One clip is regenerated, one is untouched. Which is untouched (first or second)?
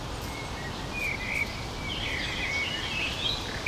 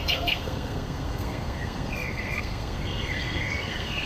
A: first